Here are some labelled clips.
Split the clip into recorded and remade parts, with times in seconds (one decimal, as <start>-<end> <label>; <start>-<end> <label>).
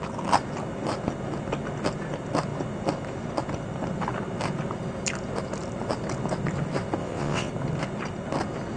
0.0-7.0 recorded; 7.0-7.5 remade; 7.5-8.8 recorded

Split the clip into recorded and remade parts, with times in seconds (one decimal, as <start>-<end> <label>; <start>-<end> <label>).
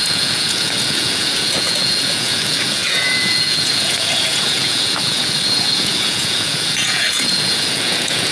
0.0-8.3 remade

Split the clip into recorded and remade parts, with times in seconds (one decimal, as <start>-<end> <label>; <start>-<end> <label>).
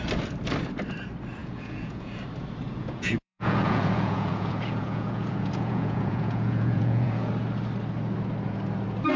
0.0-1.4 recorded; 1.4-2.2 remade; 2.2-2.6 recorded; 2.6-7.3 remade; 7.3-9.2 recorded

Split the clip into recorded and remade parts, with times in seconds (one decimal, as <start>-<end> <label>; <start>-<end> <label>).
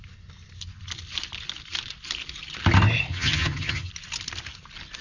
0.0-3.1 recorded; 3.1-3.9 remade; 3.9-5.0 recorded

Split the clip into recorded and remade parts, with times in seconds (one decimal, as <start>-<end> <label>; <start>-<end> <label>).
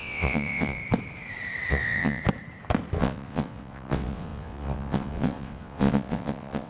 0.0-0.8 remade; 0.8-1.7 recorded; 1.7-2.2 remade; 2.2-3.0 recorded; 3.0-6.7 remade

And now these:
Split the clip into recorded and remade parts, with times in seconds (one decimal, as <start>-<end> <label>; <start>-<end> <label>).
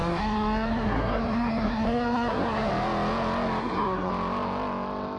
0.0-2.7 remade; 2.7-3.6 recorded; 3.6-4.1 remade; 4.1-5.2 recorded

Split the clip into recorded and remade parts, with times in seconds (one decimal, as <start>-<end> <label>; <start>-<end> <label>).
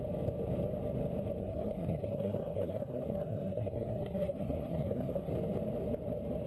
0.0-1.4 recorded; 1.4-5.3 remade; 5.3-6.5 recorded